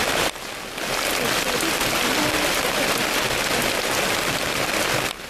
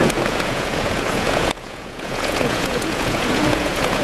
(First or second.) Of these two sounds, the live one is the first